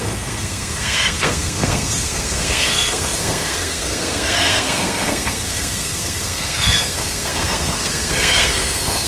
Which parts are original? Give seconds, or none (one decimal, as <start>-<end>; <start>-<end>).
none